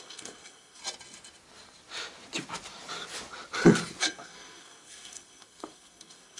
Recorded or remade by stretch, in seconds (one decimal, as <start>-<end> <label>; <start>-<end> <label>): 0.0-0.8 remade; 0.8-4.0 recorded; 4.0-6.4 remade